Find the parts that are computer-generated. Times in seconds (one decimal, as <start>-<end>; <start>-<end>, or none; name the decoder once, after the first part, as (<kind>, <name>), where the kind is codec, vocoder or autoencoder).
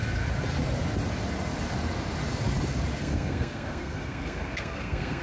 3.0-5.2 (codec, SNAC)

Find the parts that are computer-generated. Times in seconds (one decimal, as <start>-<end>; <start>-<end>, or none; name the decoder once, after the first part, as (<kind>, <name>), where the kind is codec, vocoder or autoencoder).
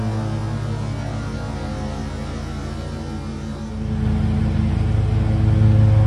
none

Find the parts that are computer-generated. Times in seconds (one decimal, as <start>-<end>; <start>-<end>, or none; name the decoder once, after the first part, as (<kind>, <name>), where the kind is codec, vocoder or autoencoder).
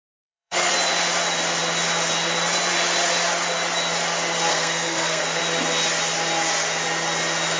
0.0-0.7 (codec, SNAC); 4.5-5.4